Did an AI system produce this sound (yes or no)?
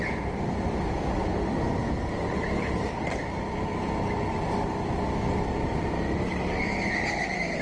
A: no